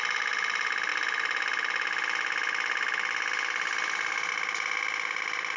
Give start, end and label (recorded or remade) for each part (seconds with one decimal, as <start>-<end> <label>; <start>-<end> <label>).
0.0-5.6 recorded